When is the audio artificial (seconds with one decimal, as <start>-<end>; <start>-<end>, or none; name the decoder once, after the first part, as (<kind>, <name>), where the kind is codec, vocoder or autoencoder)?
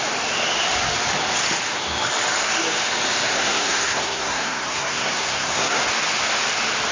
3.3-5.8 (codec, SNAC)